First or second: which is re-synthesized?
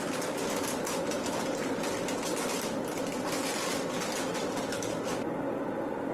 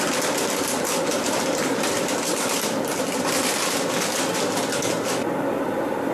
second